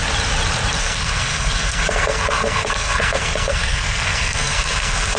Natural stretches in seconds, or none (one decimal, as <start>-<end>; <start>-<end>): 0.0-0.8